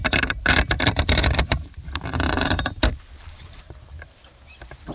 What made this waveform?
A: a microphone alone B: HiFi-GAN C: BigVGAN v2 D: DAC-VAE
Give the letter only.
C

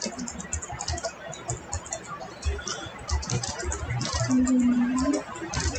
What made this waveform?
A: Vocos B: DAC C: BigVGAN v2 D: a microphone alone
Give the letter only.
D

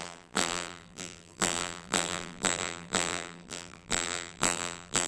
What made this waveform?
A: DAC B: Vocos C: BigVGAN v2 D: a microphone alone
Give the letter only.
C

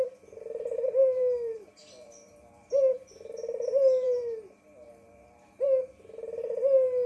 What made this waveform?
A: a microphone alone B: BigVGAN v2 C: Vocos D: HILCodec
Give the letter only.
B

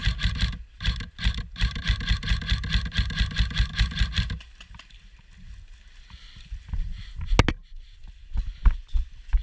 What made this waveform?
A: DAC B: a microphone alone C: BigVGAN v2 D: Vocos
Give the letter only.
B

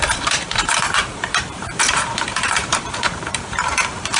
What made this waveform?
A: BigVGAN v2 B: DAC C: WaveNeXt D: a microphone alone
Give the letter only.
A